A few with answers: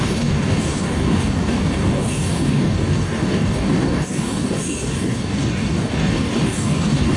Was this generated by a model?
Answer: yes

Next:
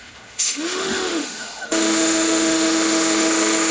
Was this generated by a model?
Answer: yes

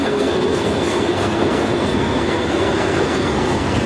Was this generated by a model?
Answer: yes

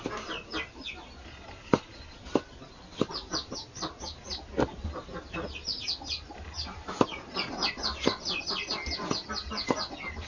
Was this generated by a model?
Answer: no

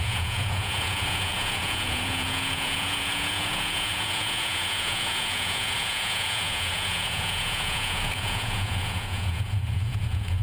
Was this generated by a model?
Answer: yes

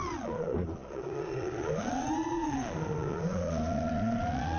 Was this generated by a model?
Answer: yes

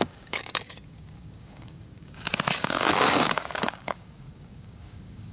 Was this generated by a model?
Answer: yes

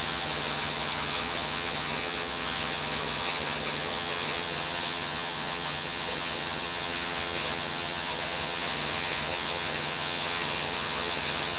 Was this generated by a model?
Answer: yes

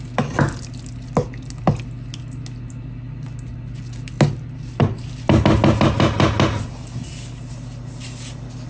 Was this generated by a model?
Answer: no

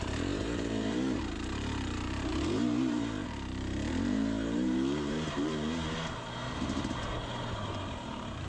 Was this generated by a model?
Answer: yes